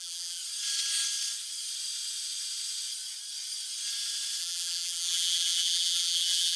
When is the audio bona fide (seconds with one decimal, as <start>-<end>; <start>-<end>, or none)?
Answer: 0.4-4.4